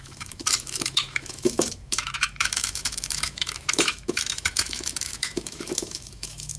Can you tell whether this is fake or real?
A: fake